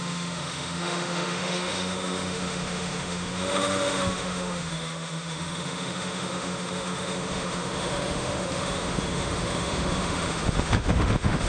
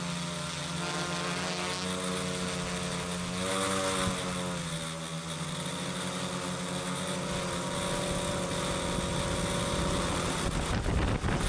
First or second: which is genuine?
second